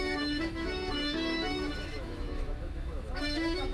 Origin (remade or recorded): remade